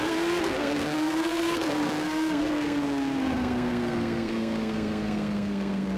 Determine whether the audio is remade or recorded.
remade